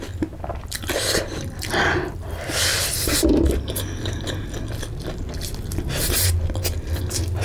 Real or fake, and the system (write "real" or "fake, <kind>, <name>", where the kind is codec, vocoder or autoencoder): real